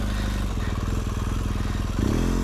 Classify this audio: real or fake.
real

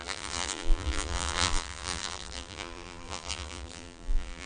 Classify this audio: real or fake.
fake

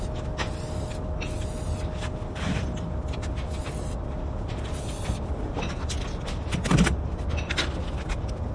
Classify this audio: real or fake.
real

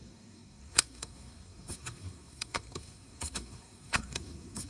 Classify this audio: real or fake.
fake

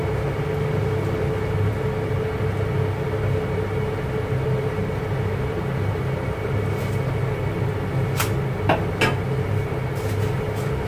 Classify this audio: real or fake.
real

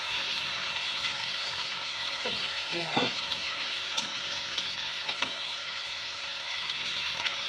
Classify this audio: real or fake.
fake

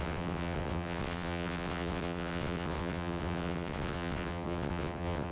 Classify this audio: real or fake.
fake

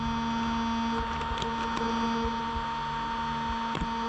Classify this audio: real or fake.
real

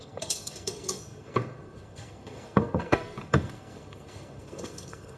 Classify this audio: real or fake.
fake